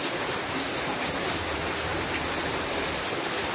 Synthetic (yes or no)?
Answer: yes